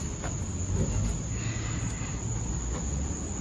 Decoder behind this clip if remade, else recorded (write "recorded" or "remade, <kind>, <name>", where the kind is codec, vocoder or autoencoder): recorded